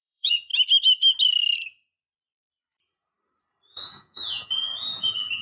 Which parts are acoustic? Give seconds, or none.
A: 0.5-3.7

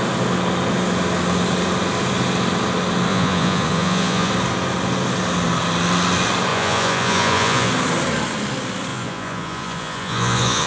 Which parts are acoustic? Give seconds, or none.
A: 0.0-3.1; 4.3-6.5; 7.7-8.9

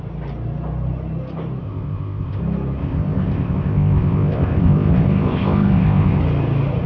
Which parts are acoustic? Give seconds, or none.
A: 0.0-1.6; 2.4-2.8; 6.2-6.9

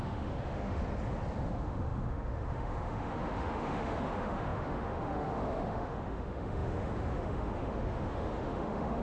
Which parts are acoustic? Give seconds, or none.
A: 0.8-1.5

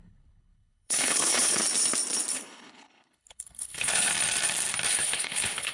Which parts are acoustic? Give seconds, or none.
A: 1.6-2.3; 4.1-4.9